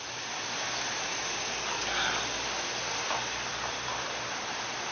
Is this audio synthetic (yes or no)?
yes